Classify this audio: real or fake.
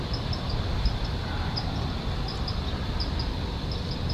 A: real